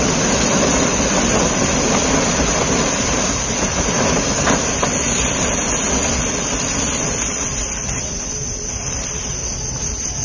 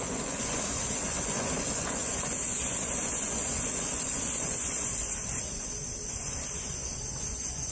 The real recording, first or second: first